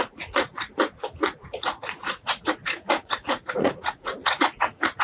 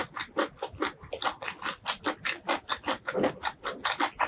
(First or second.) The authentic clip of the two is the second